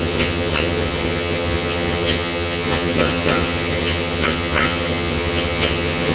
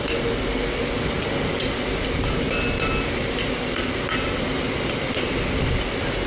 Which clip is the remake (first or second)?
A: first